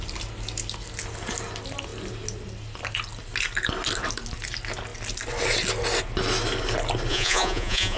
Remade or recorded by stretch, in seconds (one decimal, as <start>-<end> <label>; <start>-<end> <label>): 0.0-7.1 recorded; 7.1-8.0 remade